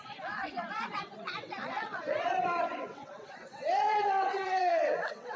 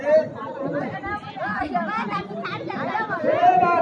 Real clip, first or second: second